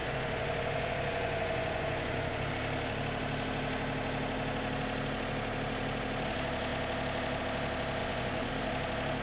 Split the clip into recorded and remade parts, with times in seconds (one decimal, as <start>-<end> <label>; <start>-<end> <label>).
0.0-2.5 remade; 2.5-8.0 recorded; 8.0-8.5 remade; 8.5-9.2 recorded